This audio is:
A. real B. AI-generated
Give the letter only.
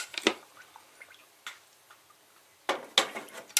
A